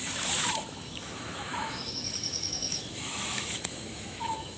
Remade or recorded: remade